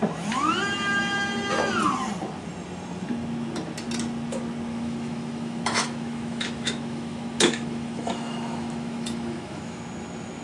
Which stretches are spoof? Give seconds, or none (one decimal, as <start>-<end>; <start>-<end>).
4.7-9.8